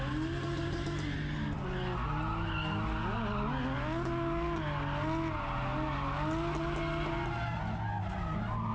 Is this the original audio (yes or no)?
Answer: yes